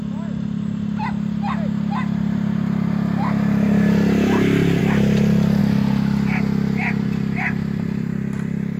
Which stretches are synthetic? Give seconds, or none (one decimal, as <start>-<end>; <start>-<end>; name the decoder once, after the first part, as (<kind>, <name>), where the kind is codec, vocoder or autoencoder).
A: none